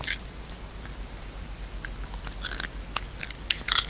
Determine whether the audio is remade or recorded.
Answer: recorded